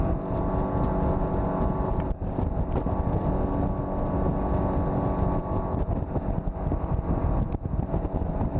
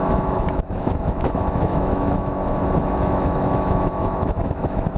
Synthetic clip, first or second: second